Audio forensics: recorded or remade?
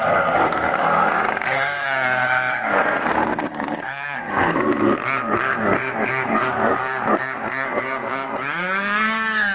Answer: remade